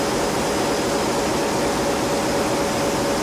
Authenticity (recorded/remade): recorded